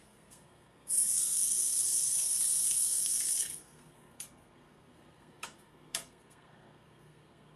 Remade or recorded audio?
remade